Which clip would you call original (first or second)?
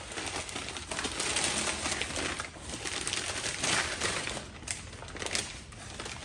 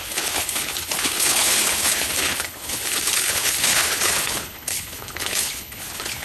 first